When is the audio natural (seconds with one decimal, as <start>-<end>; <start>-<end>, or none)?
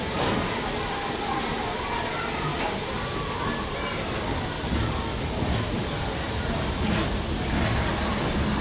0.0-8.6